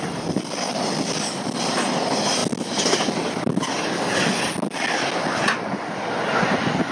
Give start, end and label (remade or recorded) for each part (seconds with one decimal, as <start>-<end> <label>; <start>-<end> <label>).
0.0-6.9 recorded